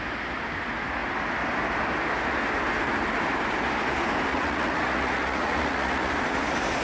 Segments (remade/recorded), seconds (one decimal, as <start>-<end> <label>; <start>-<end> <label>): 0.0-4.3 recorded; 4.3-6.1 remade; 6.1-6.8 recorded